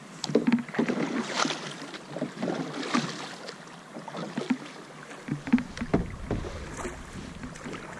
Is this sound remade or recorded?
recorded